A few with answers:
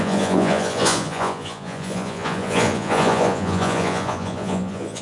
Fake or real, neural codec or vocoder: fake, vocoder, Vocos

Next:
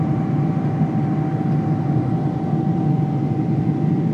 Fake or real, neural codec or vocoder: real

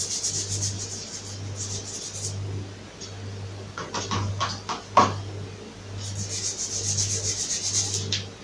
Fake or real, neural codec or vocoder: real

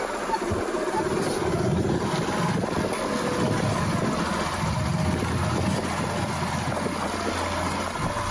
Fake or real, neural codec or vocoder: real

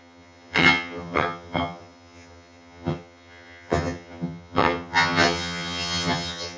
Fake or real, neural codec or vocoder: fake, vocoder, HiFi-GAN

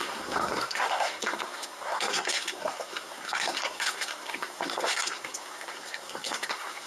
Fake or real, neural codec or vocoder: fake, codec, SNAC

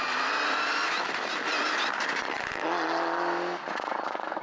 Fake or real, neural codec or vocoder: real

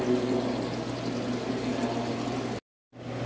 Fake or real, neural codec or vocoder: real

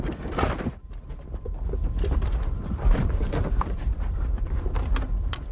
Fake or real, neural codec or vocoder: real